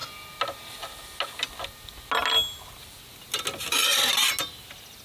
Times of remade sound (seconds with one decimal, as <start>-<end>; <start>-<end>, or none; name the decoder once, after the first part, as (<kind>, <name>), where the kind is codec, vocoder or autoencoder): none

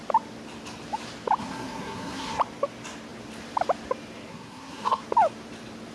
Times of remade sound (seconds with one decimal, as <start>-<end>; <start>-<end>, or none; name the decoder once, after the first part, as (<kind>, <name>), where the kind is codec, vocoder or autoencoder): 1.4-2.4 (codec, SNAC); 4.3-5.0

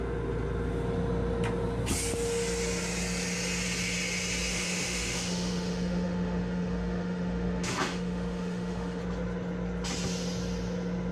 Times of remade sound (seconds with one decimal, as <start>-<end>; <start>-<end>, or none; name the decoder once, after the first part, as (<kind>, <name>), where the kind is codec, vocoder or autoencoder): 4.5-9.0 (autoencoder, DAC-VAE)

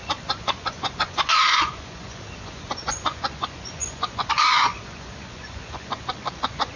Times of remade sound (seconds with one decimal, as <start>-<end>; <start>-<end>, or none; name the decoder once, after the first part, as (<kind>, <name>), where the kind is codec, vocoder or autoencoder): 0.0-6.8 (vocoder, Vocos)

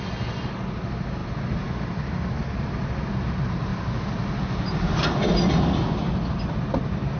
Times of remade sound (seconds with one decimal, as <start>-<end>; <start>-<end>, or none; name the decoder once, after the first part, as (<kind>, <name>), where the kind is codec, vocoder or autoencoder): none

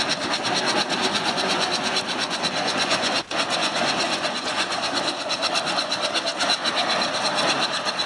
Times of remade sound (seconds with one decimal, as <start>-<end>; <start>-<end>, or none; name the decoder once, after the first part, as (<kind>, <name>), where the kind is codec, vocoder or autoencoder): 1.0-5.9 (vocoder, Vocos)

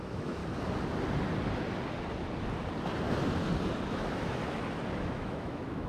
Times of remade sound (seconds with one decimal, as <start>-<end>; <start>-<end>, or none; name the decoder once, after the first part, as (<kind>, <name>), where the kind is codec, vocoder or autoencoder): 0.0-0.4 (autoencoder, DAC-VAE); 3.9-4.4; 4.9-5.9

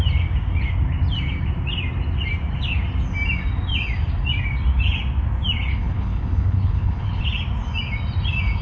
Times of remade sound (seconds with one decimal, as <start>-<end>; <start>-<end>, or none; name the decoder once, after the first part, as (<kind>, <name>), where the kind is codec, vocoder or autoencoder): 5.7-7.2 (codec, HILCodec)